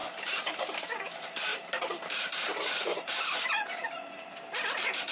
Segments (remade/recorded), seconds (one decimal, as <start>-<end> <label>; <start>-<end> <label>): 0.0-5.1 remade